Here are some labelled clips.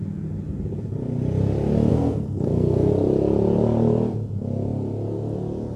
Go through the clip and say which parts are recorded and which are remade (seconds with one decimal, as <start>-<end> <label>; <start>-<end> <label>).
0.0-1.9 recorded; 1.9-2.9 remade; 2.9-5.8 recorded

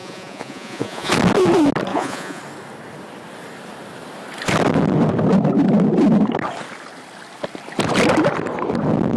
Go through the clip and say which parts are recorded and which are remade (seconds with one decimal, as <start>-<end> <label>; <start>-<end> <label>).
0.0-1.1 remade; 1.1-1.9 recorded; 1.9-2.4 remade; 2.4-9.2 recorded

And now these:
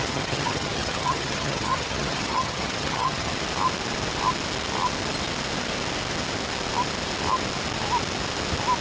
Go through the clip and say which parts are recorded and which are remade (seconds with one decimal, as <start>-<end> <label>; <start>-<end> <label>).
0.0-3.3 remade; 3.3-8.8 recorded

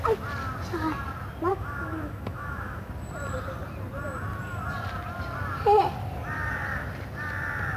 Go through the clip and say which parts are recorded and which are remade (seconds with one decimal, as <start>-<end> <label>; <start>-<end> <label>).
0.0-1.5 recorded; 1.5-2.9 remade; 2.9-7.8 recorded

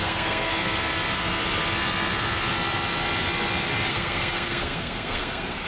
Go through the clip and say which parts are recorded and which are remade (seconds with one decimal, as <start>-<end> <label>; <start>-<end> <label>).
0.0-0.5 remade; 0.5-3.9 recorded; 3.9-5.7 remade